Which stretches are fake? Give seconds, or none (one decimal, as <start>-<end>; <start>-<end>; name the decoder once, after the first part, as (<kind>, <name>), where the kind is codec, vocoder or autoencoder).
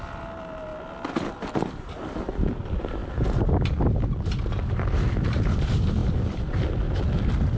0.7-1.8 (vocoder, BigVGAN v2)